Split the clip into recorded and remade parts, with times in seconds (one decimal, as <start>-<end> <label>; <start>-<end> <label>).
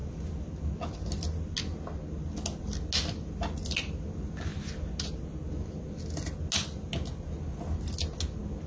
0.0-8.7 recorded